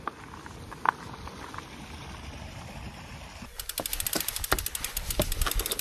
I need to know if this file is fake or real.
real